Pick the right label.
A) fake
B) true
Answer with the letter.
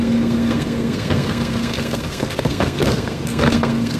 A